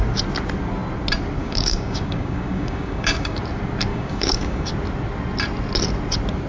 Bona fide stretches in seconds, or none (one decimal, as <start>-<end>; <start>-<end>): 0.0-1.4; 3.4-3.9; 4.7-6.5